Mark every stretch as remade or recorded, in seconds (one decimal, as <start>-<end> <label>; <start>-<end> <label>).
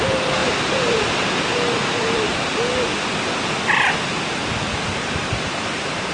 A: 0.0-0.4 recorded; 0.4-2.5 remade; 2.5-4.9 recorded; 4.9-6.1 remade